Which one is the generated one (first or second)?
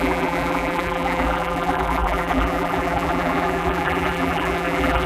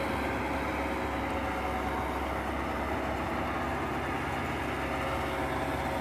first